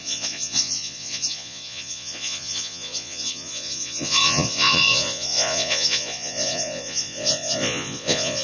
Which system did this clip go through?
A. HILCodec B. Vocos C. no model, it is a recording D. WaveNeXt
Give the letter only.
B